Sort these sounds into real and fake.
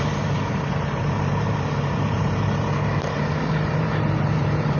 fake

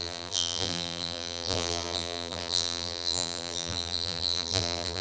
fake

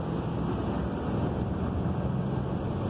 real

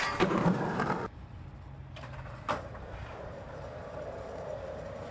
fake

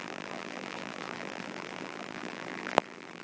fake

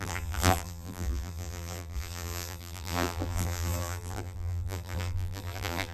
fake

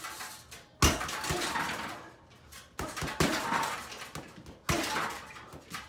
real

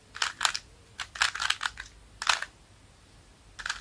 real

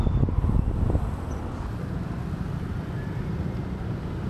fake